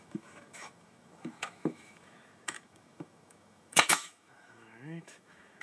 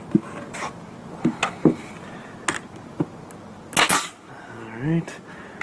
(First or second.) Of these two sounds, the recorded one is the second